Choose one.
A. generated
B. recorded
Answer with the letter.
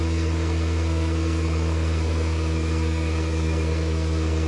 A